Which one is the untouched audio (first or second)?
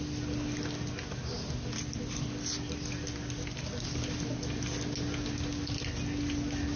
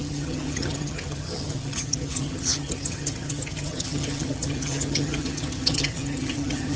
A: first